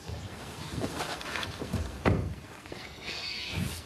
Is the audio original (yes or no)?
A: no